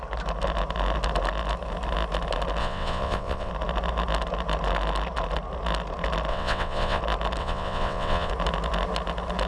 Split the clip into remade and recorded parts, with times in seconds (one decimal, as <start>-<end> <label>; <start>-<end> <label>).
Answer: 0.0-2.6 recorded; 2.6-3.5 remade; 3.5-6.3 recorded; 6.3-7.0 remade; 7.0-7.4 recorded; 7.4-8.3 remade; 8.3-9.5 recorded